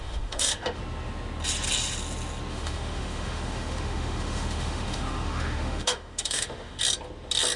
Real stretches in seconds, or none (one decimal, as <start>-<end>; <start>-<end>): 0.8-2.5; 6.8-7.6